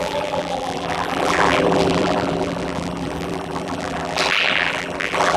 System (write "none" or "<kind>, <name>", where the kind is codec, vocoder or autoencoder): vocoder, BigVGAN v2